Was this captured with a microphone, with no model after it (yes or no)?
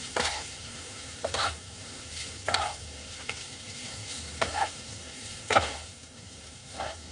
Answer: no